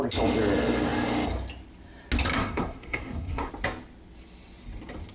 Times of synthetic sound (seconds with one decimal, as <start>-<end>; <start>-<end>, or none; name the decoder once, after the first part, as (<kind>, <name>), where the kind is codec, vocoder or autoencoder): 2.3-3.5 (codec, SNAC)